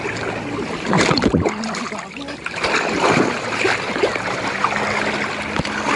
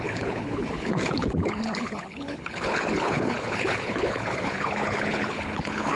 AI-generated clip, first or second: second